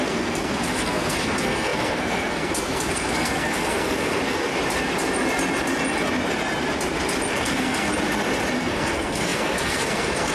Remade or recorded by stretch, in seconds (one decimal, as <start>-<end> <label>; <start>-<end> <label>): 0.0-4.5 remade; 4.5-7.3 recorded; 7.3-7.9 remade; 7.9-8.6 recorded; 8.6-10.3 remade

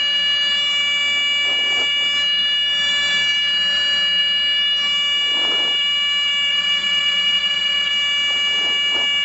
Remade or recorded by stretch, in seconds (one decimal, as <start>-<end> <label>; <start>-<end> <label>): 0.0-6.5 recorded; 6.5-7.9 remade; 7.9-9.2 recorded

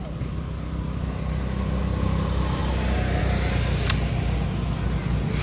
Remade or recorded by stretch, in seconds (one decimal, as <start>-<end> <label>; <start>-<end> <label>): 0.0-5.4 recorded

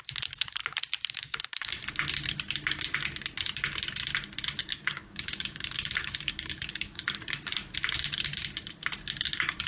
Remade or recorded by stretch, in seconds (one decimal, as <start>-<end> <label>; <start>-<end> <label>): 0.0-0.6 remade; 0.6-1.1 recorded; 1.1-1.8 remade; 1.8-4.6 recorded; 4.6-7.5 remade; 7.5-9.2 recorded; 9.2-9.7 remade

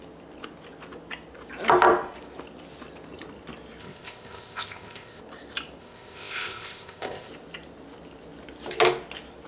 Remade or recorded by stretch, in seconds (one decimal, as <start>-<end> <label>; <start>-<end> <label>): 0.0-3.8 recorded; 3.8-5.2 remade; 5.2-5.8 recorded; 5.8-7.3 remade; 7.3-9.5 recorded

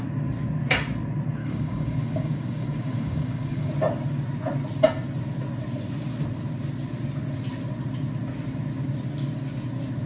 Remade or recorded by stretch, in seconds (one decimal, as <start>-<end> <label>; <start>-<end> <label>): 0.0-1.4 recorded; 1.4-3.7 remade; 3.7-10.1 recorded

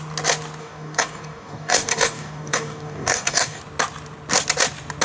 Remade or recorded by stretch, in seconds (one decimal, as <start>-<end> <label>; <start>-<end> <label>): 0.0-0.6 recorded; 0.6-3.6 remade; 3.6-5.0 recorded

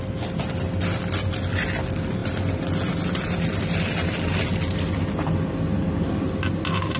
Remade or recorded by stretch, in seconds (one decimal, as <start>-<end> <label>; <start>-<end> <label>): 0.0-7.0 recorded